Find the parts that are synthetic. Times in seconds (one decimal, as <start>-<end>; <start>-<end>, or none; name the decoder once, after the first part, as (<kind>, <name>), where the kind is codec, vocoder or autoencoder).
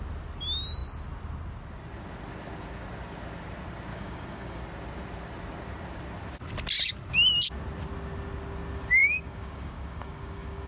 3.9-4.6 (codec, DAC); 9.0-10.7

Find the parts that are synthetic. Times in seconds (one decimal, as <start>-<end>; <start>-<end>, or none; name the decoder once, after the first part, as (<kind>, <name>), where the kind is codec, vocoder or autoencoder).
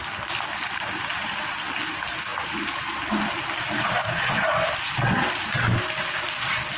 none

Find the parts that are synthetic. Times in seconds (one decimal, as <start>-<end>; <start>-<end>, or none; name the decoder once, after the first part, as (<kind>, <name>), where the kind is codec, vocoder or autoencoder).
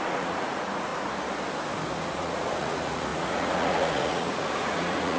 0.0-0.9 (vocoder, Vocos); 2.0-5.2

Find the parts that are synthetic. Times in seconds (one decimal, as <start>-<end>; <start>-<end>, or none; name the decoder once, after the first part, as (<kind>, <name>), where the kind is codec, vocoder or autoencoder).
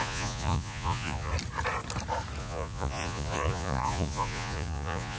0.0-1.3 (vocoder, Vocos); 2.4-5.2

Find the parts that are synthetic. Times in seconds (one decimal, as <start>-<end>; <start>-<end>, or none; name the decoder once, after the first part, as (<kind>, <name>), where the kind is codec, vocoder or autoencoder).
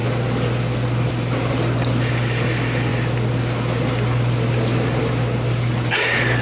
none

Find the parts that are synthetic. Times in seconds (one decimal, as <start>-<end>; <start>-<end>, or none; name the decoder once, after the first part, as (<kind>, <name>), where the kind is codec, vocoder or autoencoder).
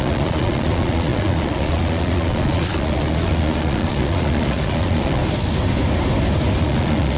0.0-5.2 (vocoder, Vocos); 6.6-7.2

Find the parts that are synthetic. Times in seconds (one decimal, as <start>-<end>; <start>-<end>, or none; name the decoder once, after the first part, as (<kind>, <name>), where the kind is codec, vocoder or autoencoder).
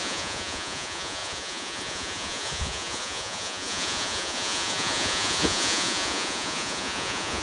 0.0-7.4 (vocoder, Vocos)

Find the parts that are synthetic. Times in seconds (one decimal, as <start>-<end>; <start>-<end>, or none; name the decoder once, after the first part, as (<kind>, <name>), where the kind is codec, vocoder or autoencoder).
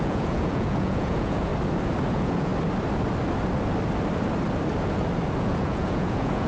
0.0-1.5 (vocoder, Vocos); 2.1-2.5; 5.4-6.5